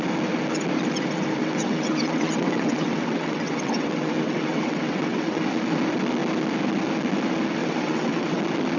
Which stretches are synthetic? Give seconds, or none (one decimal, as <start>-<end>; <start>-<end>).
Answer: 1.4-5.4; 7.6-8.4